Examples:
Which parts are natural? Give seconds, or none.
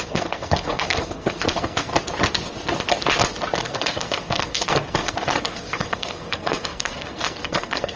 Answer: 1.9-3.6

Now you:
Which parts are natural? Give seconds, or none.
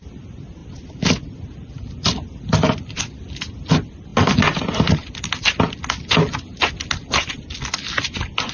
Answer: 0.0-8.5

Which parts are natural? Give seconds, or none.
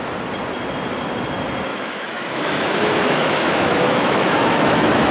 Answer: 0.0-1.7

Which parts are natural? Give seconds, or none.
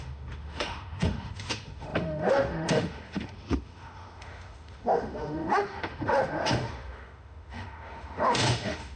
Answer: none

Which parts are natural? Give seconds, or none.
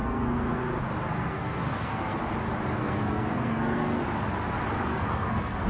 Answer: 0.6-1.1; 2.2-2.8; 4.0-4.9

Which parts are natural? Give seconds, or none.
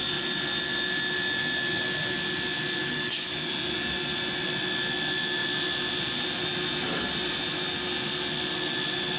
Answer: 0.0-2.8; 3.5-9.2